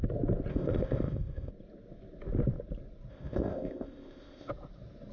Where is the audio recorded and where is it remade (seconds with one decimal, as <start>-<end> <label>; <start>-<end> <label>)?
0.0-0.5 recorded; 0.5-1.5 remade; 1.5-3.1 recorded; 3.1-4.5 remade; 4.5-5.1 recorded